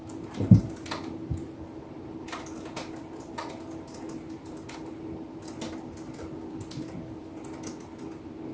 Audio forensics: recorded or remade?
recorded